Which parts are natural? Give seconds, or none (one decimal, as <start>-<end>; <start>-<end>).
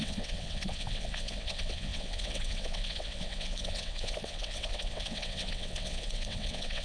none